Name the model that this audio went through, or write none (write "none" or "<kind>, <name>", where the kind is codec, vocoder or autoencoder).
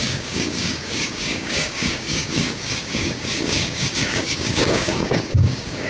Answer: codec, DAC